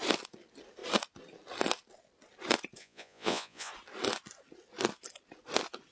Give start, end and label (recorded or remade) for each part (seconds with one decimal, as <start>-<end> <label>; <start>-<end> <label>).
0.0-2.8 recorded; 2.8-3.7 remade; 3.7-5.9 recorded